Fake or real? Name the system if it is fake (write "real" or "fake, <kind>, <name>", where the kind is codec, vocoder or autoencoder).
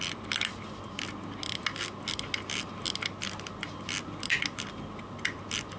real